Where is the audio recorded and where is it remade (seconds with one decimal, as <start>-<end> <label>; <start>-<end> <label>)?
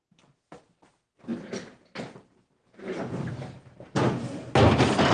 0.0-5.1 recorded